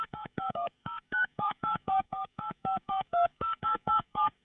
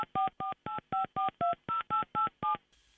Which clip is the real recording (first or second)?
second